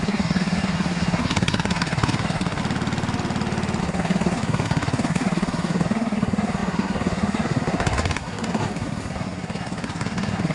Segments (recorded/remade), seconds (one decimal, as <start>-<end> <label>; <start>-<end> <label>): 0.0-2.6 remade; 2.6-3.8 recorded; 3.8-10.5 remade